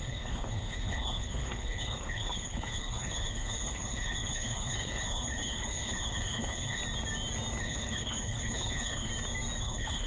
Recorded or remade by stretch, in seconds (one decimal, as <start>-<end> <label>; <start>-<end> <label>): 0.0-6.8 remade; 6.8-7.6 recorded; 7.6-9.1 remade; 9.1-9.6 recorded; 9.6-10.1 remade